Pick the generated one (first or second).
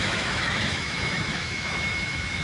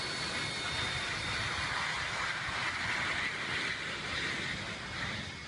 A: first